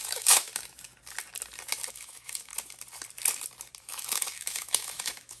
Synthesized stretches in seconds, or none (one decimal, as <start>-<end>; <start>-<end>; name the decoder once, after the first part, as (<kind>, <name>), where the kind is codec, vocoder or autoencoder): 0.0-0.5 (autoencoder, DAC-VAE); 1.9-2.5; 3.8-5.4